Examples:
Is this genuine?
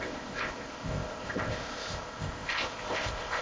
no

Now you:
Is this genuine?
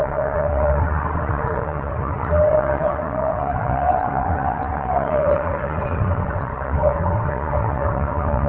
no